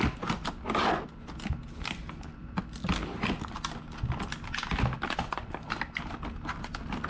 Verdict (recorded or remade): recorded